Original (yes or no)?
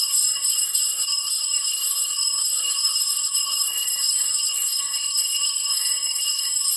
no